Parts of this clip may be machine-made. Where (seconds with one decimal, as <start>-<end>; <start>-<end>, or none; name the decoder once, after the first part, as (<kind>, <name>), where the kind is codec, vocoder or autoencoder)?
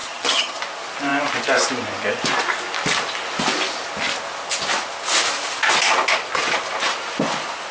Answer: 0.0-0.6 (vocoder, HiFi-GAN)